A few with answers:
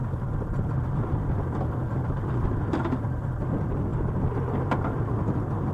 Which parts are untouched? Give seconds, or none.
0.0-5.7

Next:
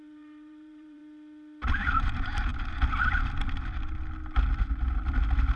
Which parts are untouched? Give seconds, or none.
1.0-1.8; 2.5-5.6

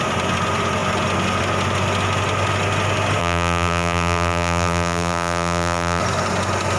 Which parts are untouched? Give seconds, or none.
0.0-3.2; 6.0-6.8

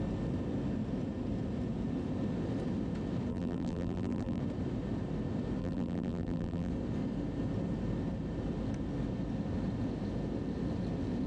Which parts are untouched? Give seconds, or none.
0.0-3.3; 4.4-5.6; 6.7-11.3

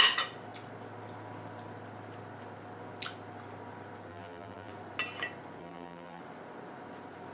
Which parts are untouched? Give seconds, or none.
0.0-4.1; 4.7-5.6; 6.2-7.3

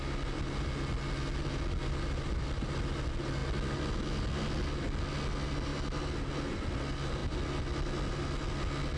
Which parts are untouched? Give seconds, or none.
0.0-9.0

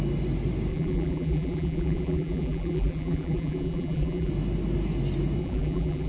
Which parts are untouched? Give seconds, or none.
0.0-0.7; 4.3-5.4

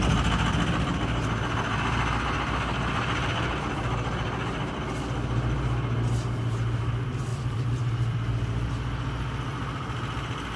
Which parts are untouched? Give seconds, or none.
0.0-7.3; 8.7-10.6